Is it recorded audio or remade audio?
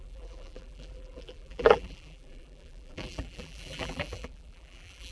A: remade